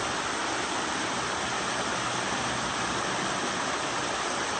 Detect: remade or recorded recorded